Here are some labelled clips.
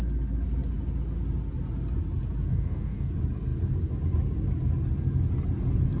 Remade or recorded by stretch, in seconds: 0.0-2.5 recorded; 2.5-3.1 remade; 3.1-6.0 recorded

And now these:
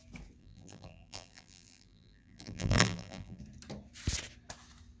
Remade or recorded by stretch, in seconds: 0.0-0.4 recorded; 0.4-3.4 remade; 3.4-5.0 recorded

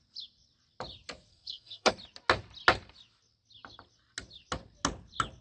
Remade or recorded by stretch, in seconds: 0.0-1.3 recorded; 1.3-1.9 remade; 1.9-5.4 recorded

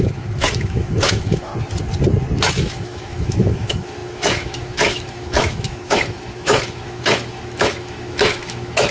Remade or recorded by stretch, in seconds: 0.0-1.5 remade; 1.5-2.5 recorded; 2.5-8.9 remade

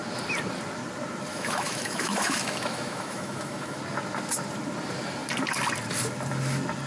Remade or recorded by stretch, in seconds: 0.0-1.3 recorded; 1.3-3.8 remade; 3.8-6.9 recorded